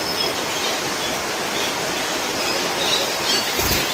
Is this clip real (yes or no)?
yes